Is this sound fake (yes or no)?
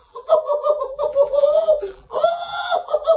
yes